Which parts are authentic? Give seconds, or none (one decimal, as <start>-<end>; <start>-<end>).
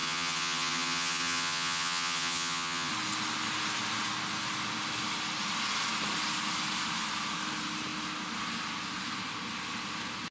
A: 2.9-10.3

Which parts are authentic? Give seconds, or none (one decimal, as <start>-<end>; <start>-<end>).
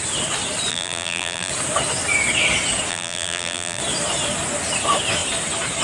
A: 0.0-0.7; 1.5-2.9; 3.8-5.8